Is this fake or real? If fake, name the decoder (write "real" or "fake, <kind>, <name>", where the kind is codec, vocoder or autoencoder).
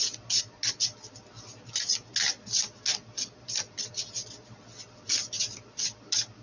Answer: real